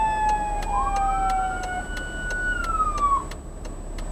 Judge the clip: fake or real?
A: real